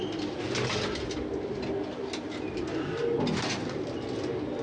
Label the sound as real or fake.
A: real